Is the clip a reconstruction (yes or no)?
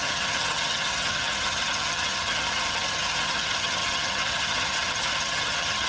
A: yes